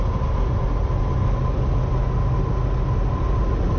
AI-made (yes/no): no